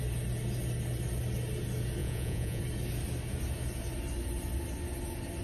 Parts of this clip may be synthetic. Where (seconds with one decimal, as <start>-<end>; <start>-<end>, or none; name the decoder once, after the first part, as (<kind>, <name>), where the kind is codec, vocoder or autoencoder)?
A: 2.0-2.6 (vocoder, Vocos)